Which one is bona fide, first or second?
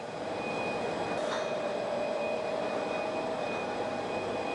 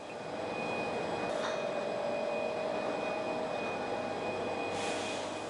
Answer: second